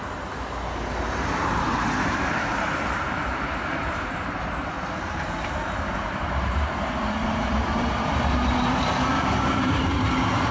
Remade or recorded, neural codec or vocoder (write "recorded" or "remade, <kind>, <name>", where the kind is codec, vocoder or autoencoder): remade, vocoder, BigVGAN v2